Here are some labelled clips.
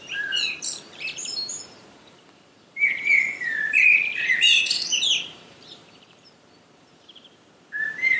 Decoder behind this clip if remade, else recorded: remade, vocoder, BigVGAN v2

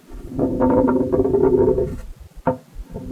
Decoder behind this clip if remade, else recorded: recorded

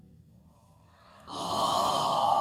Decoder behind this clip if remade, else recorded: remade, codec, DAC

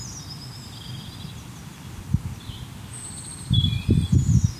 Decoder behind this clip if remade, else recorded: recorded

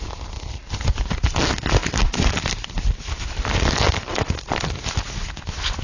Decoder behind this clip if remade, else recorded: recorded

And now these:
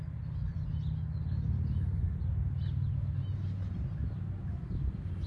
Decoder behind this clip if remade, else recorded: recorded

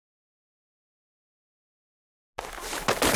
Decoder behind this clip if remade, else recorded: recorded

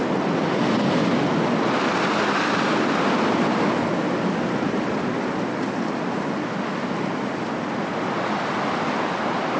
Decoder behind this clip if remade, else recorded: recorded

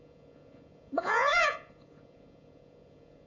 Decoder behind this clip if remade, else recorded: remade, vocoder, Vocos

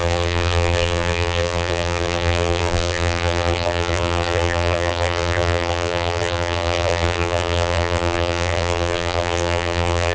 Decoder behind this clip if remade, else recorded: remade, vocoder, BigVGAN v2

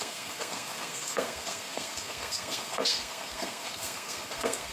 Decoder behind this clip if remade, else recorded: remade, codec, SNAC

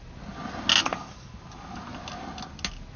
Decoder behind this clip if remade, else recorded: recorded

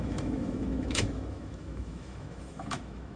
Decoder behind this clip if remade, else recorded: remade, autoencoder, DAC-VAE